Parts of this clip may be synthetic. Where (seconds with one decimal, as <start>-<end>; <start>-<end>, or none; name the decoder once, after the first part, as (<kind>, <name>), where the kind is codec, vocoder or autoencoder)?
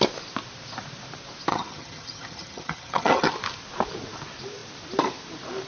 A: 1.5-3.3 (vocoder, HiFi-GAN)